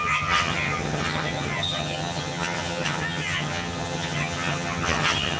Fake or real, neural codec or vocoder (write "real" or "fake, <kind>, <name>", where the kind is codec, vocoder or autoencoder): fake, vocoder, HiFi-GAN